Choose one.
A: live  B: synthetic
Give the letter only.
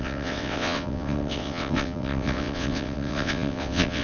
B